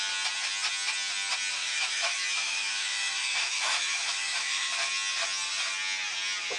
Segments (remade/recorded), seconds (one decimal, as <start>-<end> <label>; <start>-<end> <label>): 0.0-1.6 recorded; 1.6-4.7 remade; 4.7-6.6 recorded